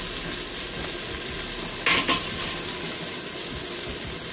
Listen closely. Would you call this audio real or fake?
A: real